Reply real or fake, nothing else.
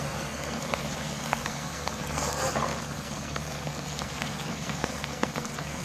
fake